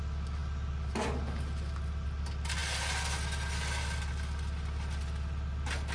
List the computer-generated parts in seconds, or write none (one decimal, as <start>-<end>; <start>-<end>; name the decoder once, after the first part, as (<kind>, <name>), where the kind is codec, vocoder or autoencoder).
none